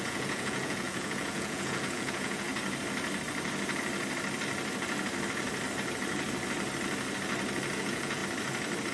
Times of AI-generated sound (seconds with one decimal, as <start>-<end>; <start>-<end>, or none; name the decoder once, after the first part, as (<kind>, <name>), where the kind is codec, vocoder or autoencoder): 0.0-2.5 (vocoder, Vocos); 7.8-8.2